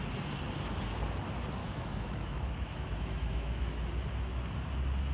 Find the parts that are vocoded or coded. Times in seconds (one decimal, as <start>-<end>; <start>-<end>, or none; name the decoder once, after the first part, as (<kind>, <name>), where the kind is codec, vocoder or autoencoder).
1.6-3.8 (autoencoder, DAC-VAE)